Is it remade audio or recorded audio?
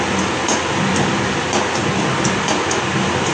recorded